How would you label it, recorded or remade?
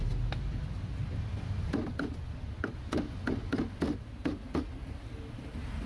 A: recorded